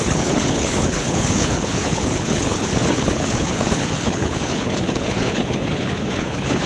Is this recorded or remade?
remade